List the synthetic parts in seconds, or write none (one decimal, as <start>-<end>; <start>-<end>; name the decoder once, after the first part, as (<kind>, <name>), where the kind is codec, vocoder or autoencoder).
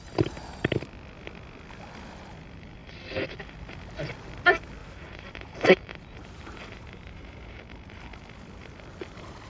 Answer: 4.8-7.6 (vocoder, BigVGAN v2)